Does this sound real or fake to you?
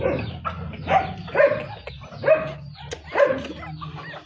real